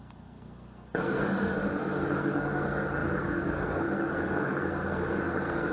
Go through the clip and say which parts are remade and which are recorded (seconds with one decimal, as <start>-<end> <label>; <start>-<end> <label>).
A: 0.0-5.7 remade